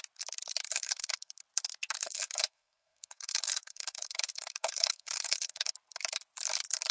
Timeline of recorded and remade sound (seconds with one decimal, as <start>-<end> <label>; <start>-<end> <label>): 0.0-0.7 recorded; 0.7-1.3 remade; 1.3-2.0 recorded; 2.0-5.7 remade; 5.7-6.9 recorded